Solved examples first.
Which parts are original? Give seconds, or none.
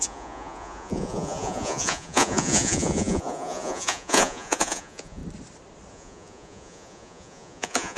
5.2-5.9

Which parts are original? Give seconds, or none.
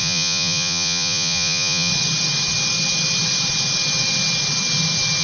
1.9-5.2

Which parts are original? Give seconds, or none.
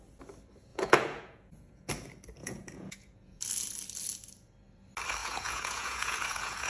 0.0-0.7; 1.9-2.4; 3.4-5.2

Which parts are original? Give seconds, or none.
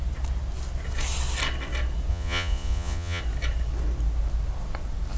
0.0-2.1; 3.2-5.2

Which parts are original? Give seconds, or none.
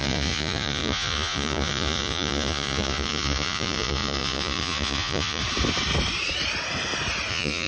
5.4-7.3